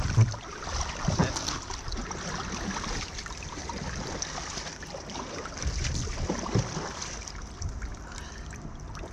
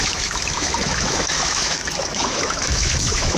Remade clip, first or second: second